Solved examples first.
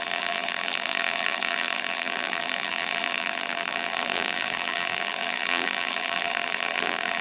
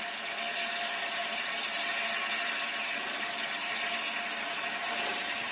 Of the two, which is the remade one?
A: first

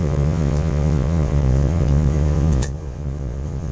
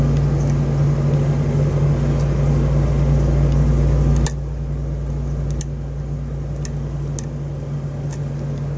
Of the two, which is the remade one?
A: first